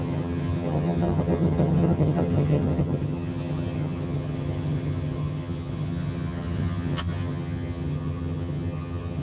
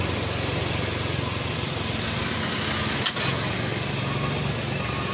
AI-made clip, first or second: first